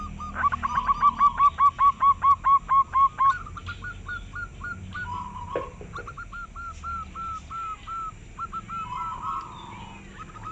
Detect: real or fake real